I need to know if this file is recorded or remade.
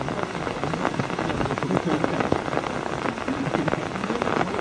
recorded